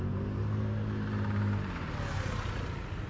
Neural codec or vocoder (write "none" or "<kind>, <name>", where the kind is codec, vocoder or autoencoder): none